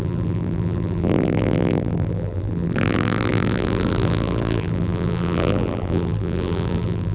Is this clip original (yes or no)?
no